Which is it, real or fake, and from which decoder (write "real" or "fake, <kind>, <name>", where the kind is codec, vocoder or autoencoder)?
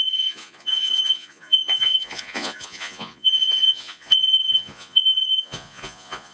fake, vocoder, Vocos